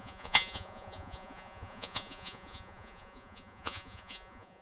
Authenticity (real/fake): fake